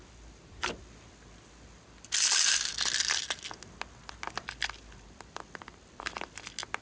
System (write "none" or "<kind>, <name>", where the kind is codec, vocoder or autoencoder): none